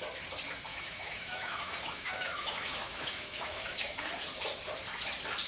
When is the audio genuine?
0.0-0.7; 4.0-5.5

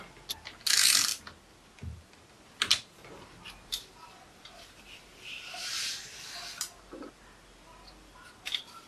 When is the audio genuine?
0.0-8.9

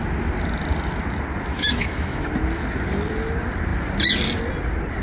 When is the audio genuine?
0.0-1.5; 2.5-5.0

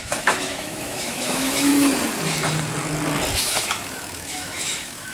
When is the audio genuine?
1.7-3.4

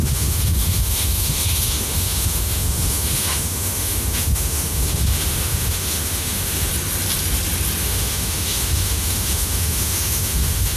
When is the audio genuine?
6.7-7.8